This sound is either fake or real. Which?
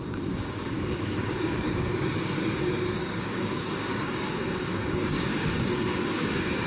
fake